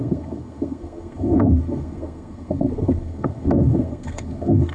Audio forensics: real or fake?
fake